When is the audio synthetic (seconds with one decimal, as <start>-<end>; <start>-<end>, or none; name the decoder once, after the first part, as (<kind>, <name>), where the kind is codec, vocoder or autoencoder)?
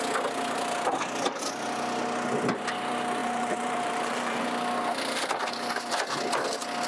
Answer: 3.2-4.4 (vocoder, BigVGAN v2)